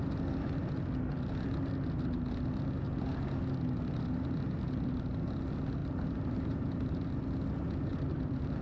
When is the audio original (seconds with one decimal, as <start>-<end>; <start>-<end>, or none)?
0.0-5.8; 7.1-7.9